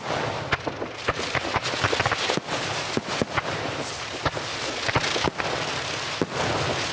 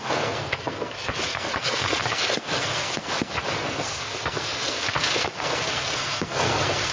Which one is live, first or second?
first